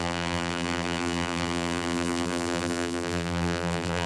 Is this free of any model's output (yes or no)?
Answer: no